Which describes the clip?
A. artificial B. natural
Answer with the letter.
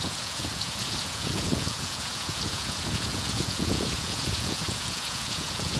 A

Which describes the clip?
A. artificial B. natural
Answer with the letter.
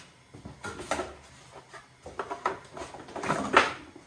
B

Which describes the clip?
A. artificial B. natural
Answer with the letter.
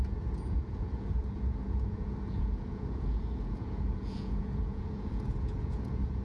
A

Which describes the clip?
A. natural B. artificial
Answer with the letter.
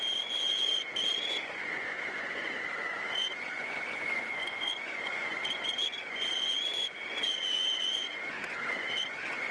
B